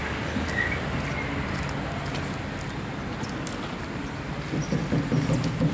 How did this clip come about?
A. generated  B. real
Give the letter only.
B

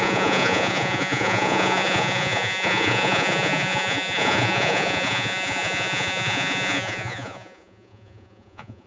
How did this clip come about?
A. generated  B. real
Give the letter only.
A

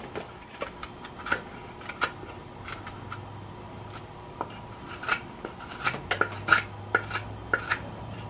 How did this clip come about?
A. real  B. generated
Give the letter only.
B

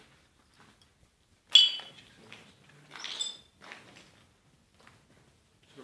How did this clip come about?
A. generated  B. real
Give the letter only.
B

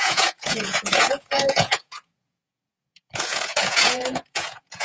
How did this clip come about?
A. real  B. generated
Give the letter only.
B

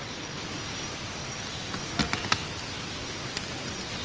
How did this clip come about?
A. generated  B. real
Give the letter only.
A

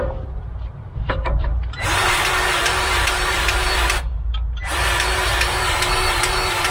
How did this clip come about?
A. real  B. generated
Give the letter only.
B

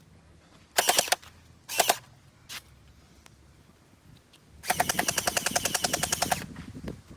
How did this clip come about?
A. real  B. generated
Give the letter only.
A